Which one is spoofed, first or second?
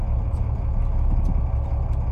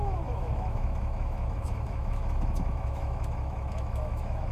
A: second